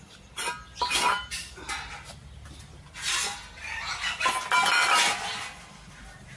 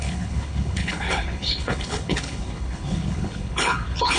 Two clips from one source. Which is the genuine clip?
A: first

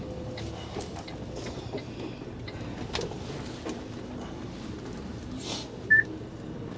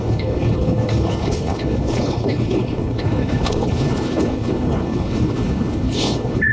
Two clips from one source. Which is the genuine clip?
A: first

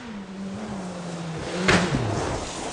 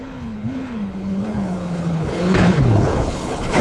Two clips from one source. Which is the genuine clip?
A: first